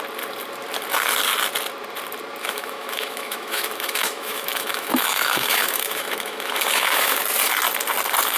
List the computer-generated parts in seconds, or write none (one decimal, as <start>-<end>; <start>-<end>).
2.4-7.2

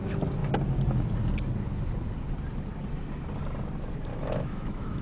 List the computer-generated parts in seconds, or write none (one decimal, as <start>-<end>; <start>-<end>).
4.1-5.0

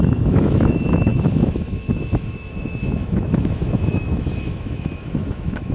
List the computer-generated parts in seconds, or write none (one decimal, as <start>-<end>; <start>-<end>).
0.0-5.7

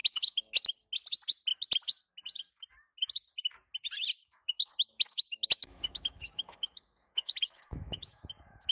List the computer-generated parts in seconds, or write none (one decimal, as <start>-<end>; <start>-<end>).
0.0-0.6; 4.2-8.7

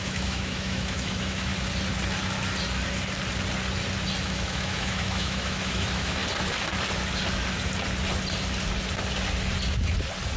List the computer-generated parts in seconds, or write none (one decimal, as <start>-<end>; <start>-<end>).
0.0-1.5; 4.2-6.2